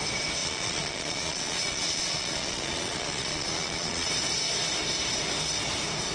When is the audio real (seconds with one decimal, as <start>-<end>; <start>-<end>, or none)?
0.0-0.4; 4.1-6.1